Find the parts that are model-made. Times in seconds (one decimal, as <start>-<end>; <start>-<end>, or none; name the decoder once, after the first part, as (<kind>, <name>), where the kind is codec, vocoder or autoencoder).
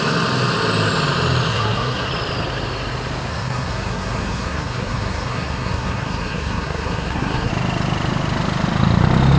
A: 1.5-2.1 (codec, SNAC); 3.3-7.5